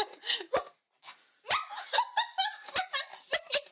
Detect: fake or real real